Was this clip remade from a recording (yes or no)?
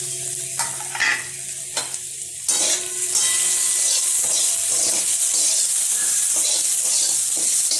no